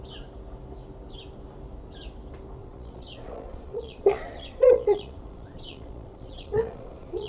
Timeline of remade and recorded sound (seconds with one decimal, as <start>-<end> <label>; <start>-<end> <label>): 0.0-2.6 recorded; 2.6-7.3 remade